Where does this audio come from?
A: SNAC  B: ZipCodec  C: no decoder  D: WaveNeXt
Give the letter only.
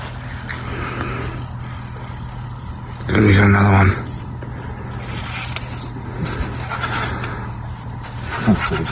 C